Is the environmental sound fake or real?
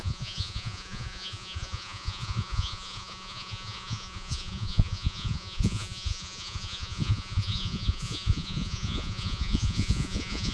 fake